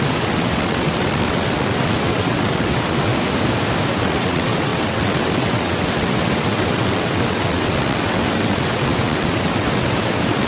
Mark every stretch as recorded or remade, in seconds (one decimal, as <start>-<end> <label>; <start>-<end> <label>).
0.0-3.1 remade; 3.1-3.9 recorded; 3.9-10.5 remade